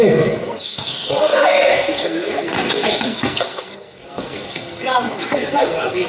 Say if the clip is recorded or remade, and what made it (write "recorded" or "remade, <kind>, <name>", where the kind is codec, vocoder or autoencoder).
remade, codec, SNAC